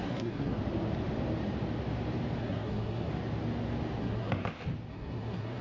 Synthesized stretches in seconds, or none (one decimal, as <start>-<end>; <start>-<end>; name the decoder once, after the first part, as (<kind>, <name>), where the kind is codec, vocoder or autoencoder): 0.0-0.6 (codec, SNAC); 2.4-3.1; 4.0-4.4; 4.9-5.6